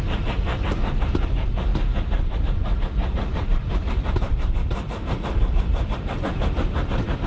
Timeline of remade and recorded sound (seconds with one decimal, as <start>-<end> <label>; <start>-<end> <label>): 0.0-3.0 recorded; 3.0-5.7 remade; 5.7-7.3 recorded